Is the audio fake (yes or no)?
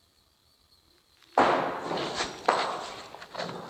no